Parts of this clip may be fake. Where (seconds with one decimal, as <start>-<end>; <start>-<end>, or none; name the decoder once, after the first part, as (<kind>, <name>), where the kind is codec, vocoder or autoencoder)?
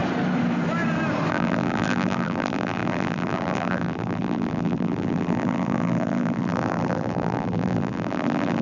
1.3-8.6 (vocoder, BigVGAN v2)